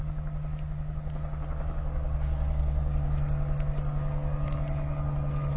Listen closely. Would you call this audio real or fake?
real